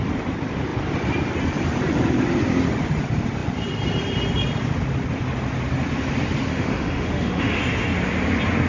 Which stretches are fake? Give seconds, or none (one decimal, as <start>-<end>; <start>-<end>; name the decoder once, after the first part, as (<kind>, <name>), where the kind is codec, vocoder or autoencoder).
6.5-7.6 (autoencoder, DAC-VAE)